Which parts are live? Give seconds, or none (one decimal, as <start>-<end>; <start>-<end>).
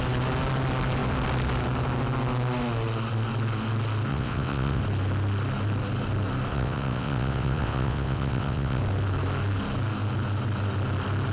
0.0-4.1; 4.8-6.5; 8.8-11.3